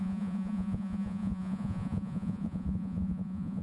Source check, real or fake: fake